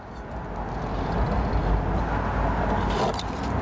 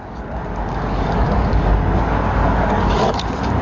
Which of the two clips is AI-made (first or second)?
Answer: second